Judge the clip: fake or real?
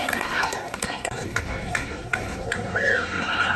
fake